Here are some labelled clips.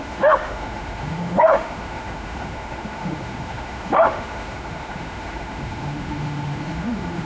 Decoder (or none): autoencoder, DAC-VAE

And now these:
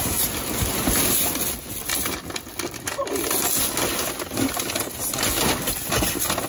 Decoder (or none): none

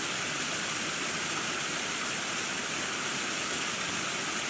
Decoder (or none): none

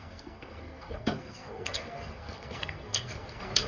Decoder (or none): codec, SNAC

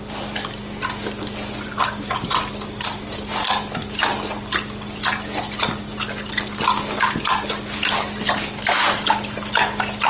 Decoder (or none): none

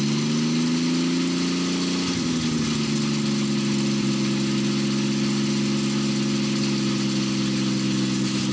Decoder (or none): none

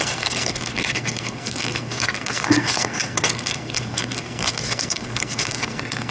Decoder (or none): codec, SNAC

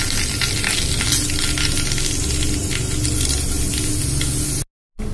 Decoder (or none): none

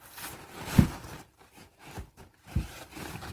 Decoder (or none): vocoder, BigVGAN v2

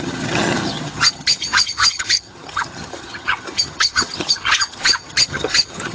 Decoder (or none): vocoder, HiFi-GAN